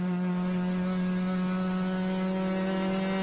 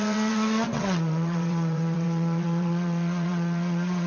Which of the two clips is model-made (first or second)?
second